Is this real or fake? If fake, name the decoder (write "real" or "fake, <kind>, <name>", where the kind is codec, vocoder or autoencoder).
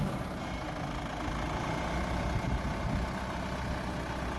real